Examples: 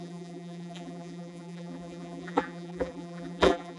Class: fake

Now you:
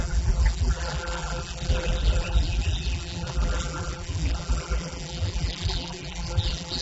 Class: fake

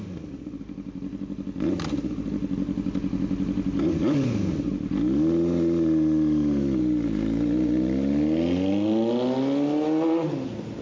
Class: real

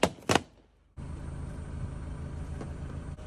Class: real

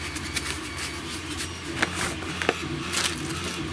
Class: real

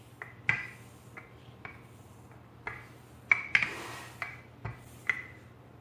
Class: real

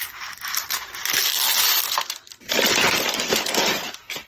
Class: real